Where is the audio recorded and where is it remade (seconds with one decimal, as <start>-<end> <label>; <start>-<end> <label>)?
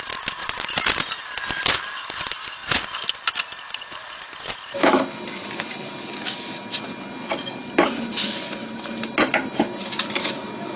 0.0-0.4 recorded; 0.4-0.9 remade; 0.9-3.9 recorded; 3.9-5.0 remade; 5.0-10.8 recorded